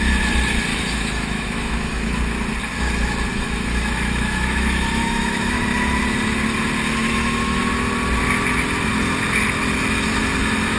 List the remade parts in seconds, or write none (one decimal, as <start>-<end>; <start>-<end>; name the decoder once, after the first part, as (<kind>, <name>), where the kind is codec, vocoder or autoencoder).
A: 0.7-2.2 (autoencoder, DAC-VAE); 3.3-5.6; 7.0-7.6